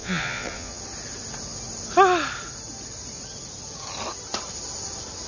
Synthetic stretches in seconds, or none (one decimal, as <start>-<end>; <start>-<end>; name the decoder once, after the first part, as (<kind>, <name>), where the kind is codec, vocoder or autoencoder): 0.0-0.8 (vocoder, Vocos)